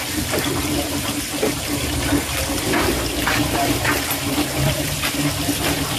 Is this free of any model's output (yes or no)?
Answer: no